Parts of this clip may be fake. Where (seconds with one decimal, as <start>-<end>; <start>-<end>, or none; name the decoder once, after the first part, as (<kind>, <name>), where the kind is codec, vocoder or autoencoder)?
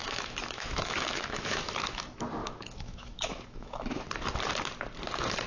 0.0-2.0 (autoencoder, DAC-VAE); 2.4-4.1